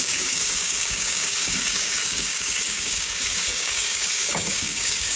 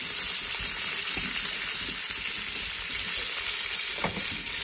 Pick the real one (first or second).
second